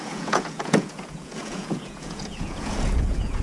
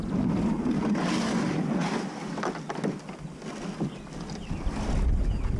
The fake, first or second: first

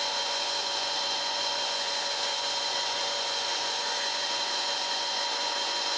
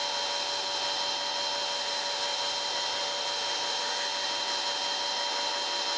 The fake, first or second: first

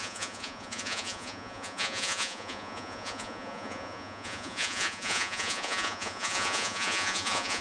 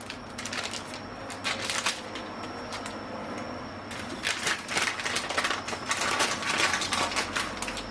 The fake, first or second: first